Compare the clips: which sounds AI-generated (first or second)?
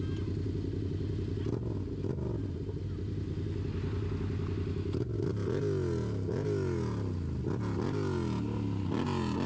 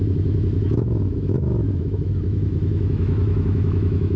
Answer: second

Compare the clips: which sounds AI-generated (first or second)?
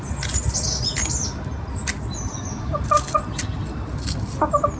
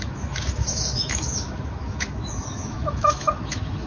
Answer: second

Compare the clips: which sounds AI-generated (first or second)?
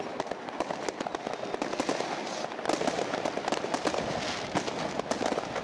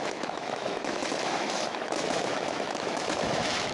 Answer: second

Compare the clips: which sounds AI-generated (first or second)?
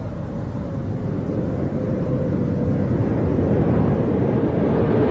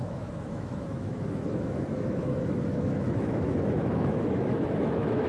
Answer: second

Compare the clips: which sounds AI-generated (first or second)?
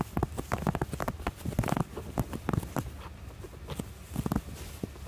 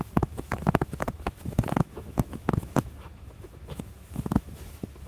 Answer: second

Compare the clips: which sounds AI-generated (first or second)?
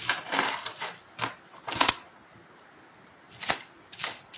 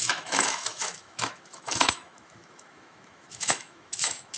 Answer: second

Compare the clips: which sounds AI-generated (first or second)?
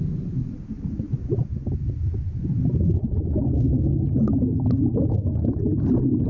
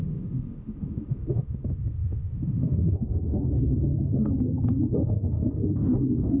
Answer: second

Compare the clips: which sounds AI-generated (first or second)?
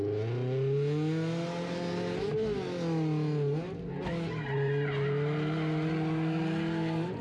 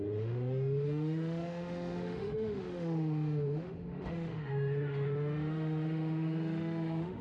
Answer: second